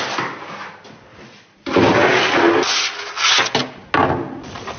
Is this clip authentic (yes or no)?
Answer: yes